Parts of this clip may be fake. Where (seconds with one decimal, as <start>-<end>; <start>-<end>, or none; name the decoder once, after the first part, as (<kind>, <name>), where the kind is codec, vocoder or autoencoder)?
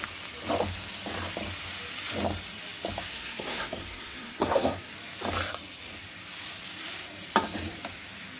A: 3.1-4.9 (codec, SNAC)